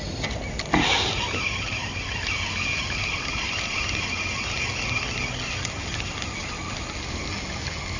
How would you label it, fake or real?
real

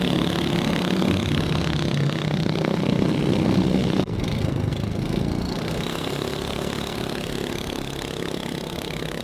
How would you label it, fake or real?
fake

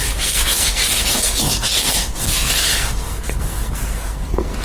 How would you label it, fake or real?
fake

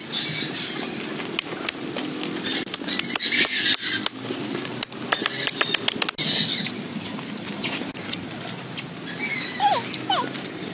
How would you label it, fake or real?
real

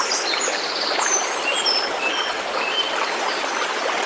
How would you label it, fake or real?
real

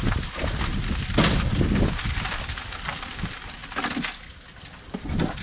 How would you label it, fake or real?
real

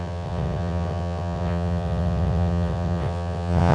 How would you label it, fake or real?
fake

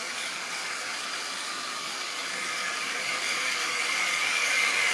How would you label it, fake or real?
fake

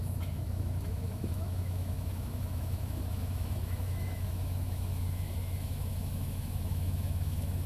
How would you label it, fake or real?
fake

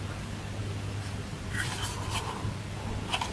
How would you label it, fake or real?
real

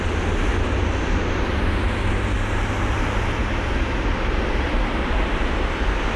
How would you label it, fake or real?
real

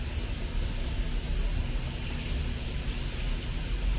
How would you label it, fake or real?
real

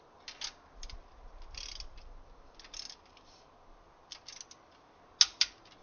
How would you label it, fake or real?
real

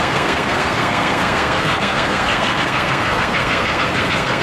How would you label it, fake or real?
fake